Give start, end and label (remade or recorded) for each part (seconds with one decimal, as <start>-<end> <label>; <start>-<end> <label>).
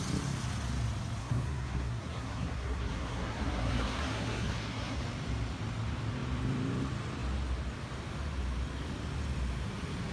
0.0-1.2 recorded; 1.2-5.0 remade; 5.0-10.1 recorded